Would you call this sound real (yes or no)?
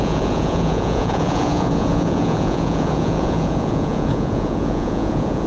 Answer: no